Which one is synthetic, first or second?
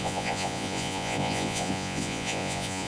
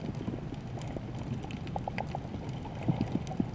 first